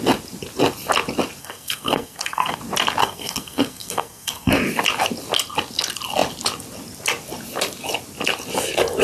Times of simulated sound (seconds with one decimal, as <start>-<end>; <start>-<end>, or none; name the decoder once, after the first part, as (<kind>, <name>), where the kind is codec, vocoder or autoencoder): 1.4-2.6 (codec, SNAC); 3.0-4.5